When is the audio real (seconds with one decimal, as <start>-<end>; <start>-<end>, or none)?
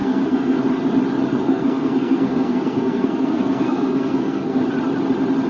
0.6-1.3; 4.6-5.5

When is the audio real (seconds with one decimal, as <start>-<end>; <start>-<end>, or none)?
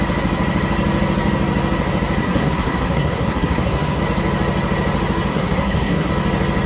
0.0-2.2; 4.0-5.3; 6.1-6.7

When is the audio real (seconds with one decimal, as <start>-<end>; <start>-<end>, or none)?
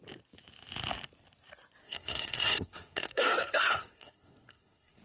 0.0-1.8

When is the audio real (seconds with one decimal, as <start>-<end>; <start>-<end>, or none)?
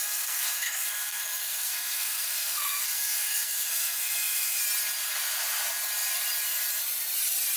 4.6-7.6